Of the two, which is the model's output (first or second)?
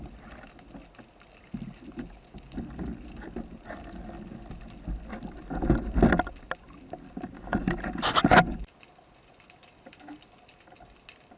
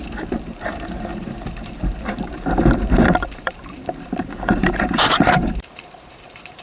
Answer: second